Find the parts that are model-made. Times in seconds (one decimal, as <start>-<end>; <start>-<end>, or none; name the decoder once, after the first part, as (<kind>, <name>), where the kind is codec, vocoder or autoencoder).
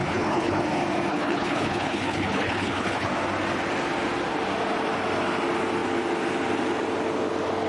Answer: 0.0-0.6 (codec, HILCodec); 1.1-3.1